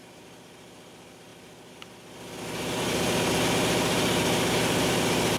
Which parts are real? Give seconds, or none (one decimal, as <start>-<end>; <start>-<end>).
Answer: 0.0-5.4